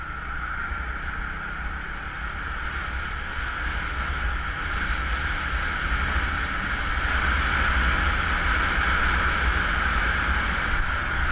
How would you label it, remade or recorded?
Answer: recorded